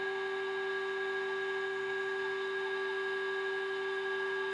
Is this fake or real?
fake